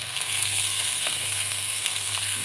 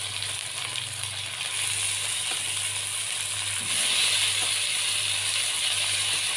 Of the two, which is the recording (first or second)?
second